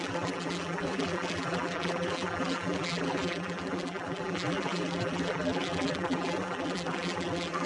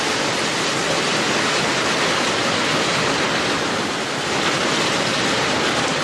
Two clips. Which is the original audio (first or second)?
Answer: second